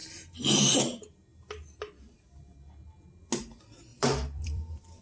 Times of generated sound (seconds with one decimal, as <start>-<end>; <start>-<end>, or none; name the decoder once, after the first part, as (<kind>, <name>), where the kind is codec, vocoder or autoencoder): 0.0-0.8 (vocoder, BigVGAN v2); 3.9-5.0